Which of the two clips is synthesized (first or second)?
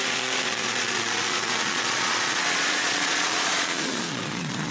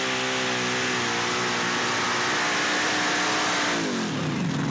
first